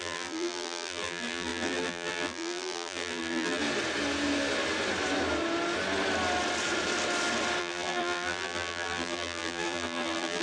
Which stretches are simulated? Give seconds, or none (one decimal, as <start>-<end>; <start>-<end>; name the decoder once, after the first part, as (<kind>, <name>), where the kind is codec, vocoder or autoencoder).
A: 0.0-3.6 (vocoder, BigVGAN v2); 7.6-10.4